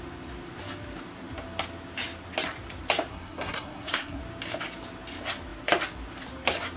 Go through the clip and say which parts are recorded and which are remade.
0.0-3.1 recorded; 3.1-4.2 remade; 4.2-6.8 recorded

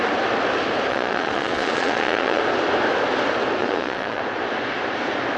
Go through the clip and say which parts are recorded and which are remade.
0.0-0.9 recorded; 0.9-2.4 remade; 2.4-3.6 recorded; 3.6-4.2 remade; 4.2-5.4 recorded

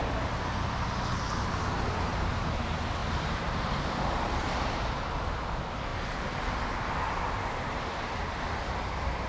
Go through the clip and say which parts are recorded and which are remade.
0.0-3.0 recorded; 3.0-4.2 remade; 4.2-9.3 recorded